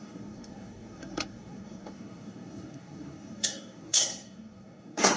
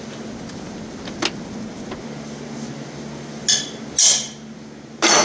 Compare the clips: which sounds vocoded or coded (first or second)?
first